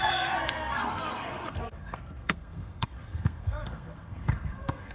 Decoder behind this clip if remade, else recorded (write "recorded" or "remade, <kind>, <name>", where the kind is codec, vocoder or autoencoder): remade, codec, SNAC